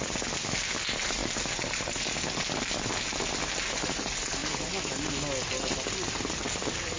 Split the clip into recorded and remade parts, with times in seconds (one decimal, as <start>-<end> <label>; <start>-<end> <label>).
0.0-7.0 recorded